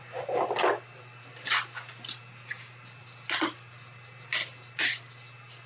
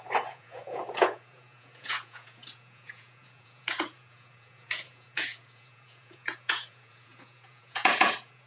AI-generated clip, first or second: second